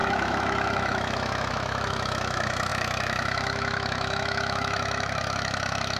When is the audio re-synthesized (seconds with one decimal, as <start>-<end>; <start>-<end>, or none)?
0.0-6.0